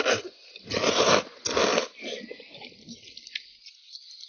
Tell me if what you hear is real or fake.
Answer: real